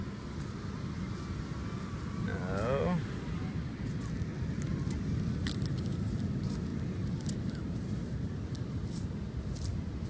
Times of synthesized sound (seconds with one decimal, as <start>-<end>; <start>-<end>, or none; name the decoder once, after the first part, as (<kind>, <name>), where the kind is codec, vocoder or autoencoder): none